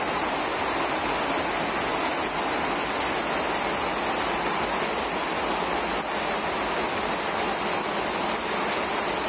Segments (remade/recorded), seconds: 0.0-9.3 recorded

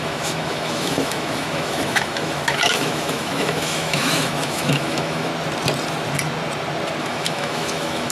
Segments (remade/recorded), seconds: 0.0-5.3 remade; 5.3-7.0 recorded; 7.0-8.1 remade

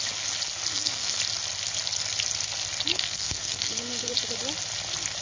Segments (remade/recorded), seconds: 0.0-0.7 recorded; 0.7-1.2 remade; 1.2-2.9 recorded; 2.9-4.1 remade; 4.1-5.2 recorded

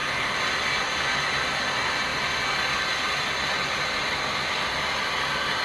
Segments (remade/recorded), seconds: 0.0-5.6 recorded

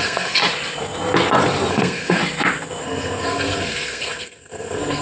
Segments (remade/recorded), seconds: 0.0-0.4 remade; 0.4-1.7 recorded; 1.7-2.2 remade; 2.2-2.8 recorded; 2.8-5.0 remade

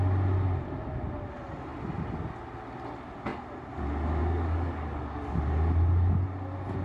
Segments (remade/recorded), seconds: 0.0-4.2 recorded; 4.2-5.4 remade; 5.4-6.8 recorded